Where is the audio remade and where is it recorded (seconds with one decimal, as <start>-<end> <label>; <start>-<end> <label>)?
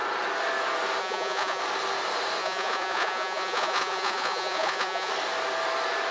0.0-1.0 recorded; 1.0-1.6 remade; 1.6-2.4 recorded; 2.4-5.1 remade; 5.1-6.1 recorded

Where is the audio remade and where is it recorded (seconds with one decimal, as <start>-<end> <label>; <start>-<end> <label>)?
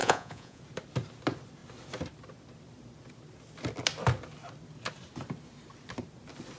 0.0-0.6 remade; 0.6-6.6 recorded